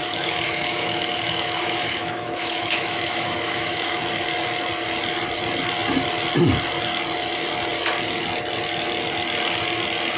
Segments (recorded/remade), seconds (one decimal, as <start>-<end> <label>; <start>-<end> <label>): 0.0-4.0 remade; 4.0-10.2 recorded